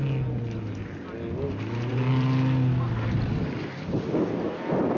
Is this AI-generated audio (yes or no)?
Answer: no